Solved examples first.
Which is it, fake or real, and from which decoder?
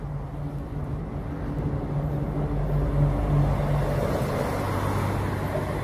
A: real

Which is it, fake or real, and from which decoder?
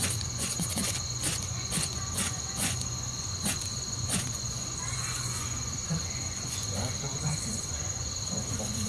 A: fake, vocoder, Vocos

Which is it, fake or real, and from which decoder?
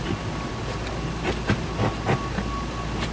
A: real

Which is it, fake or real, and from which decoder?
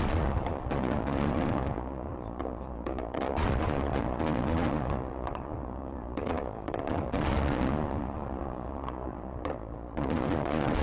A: fake, vocoder, Vocos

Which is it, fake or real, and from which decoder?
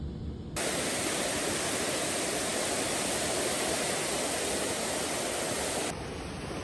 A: real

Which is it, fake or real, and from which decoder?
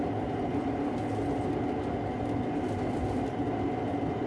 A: real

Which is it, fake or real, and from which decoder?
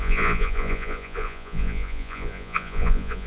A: fake, vocoder, Vocos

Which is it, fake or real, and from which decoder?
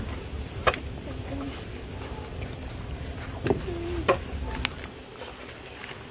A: real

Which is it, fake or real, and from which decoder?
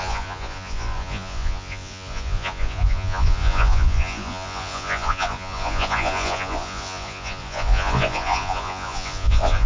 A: fake, vocoder, Vocos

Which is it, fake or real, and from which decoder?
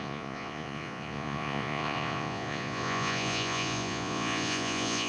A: fake, vocoder, Vocos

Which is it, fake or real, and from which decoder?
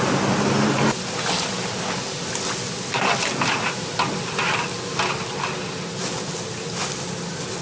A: real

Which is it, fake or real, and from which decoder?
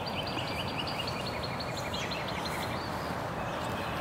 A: real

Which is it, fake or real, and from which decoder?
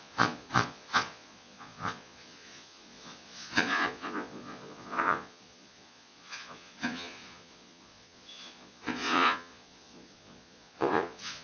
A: fake, vocoder, Vocos